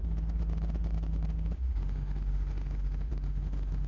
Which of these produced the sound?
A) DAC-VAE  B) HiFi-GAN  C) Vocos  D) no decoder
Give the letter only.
A